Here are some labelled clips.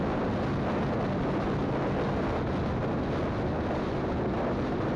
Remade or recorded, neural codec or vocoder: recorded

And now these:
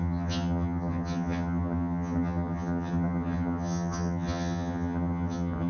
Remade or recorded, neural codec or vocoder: remade, vocoder, HiFi-GAN